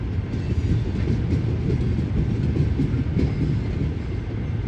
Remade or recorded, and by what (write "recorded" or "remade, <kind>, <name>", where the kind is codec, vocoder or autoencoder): recorded